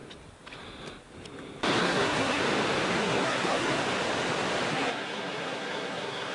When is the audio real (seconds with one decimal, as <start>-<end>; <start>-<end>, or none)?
0.0-1.8; 2.4-2.9; 3.8-4.7